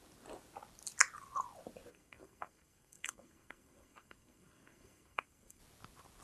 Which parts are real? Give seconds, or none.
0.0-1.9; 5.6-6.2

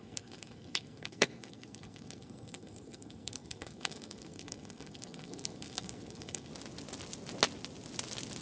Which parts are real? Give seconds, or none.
6.5-8.4